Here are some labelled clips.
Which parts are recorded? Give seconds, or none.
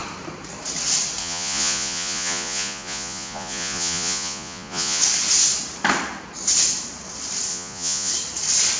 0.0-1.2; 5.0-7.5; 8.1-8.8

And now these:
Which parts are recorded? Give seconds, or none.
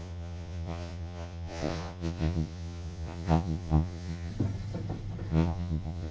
4.3-5.3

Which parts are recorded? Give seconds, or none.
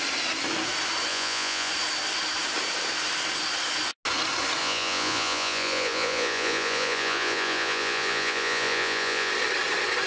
0.0-1.1; 1.7-4.6; 9.3-10.1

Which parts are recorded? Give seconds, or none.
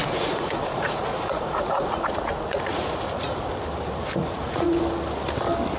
3.5-4.2; 4.8-5.8